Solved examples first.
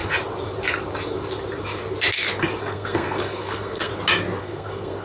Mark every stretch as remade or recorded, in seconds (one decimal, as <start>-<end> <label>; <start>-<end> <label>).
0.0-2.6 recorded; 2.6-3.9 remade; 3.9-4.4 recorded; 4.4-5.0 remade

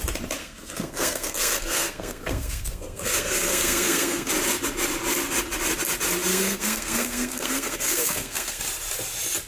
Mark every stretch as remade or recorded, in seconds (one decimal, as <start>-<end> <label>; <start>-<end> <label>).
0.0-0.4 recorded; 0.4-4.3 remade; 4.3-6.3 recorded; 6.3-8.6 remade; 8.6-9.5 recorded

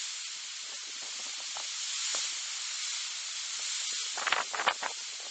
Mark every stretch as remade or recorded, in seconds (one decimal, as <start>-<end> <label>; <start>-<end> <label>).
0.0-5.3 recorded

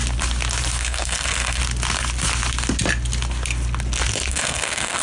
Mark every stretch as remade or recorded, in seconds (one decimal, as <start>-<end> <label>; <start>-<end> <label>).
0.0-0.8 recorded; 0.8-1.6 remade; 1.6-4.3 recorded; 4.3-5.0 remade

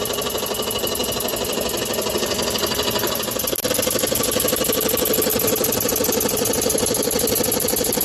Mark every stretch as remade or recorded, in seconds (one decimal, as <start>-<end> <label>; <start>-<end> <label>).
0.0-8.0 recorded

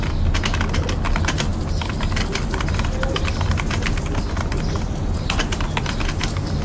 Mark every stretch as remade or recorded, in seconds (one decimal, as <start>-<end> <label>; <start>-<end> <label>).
0.0-6.6 recorded